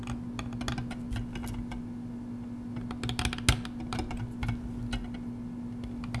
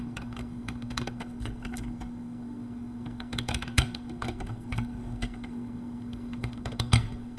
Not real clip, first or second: second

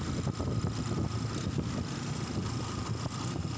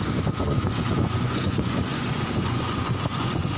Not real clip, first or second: second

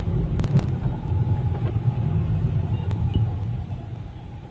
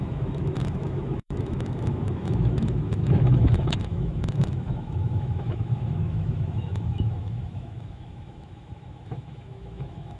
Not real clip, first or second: second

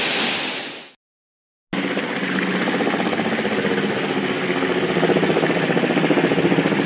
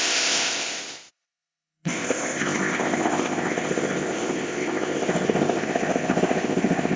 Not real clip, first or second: second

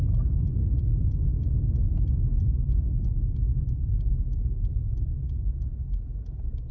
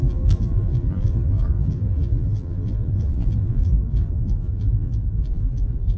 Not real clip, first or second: second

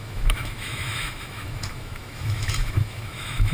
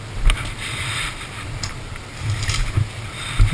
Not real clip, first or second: first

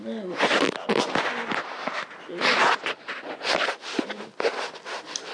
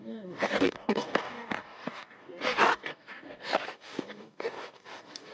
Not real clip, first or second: second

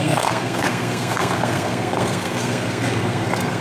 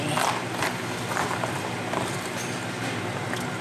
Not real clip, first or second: first